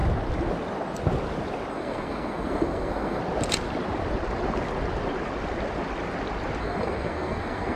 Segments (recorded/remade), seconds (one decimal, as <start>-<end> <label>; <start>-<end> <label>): 0.0-1.7 recorded; 1.7-3.2 remade; 3.2-6.6 recorded; 6.6-7.8 remade